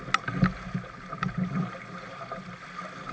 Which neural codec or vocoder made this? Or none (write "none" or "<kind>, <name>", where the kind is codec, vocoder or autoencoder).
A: none